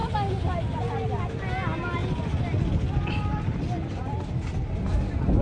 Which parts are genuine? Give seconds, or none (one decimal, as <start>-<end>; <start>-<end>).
0.0-5.4